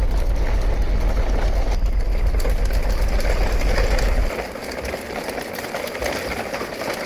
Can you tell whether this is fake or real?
real